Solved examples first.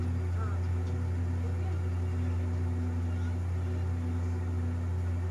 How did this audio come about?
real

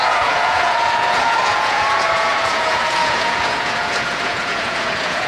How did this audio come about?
fake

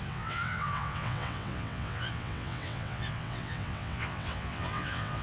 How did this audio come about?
fake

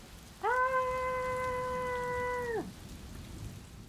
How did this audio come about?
real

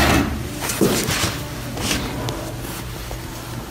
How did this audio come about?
real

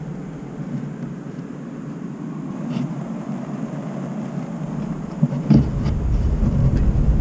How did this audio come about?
real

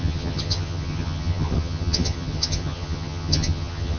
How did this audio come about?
fake